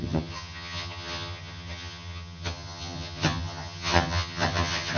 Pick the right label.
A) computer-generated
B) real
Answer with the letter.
A